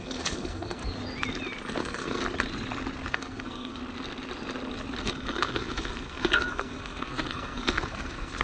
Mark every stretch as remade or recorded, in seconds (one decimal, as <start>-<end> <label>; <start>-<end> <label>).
0.0-0.8 remade; 0.8-1.8 recorded; 1.8-2.2 remade; 2.2-3.1 recorded; 3.1-3.8 remade; 3.8-5.0 recorded; 5.0-8.4 remade